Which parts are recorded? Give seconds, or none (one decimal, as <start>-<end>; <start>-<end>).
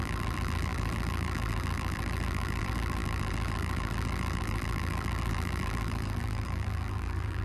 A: none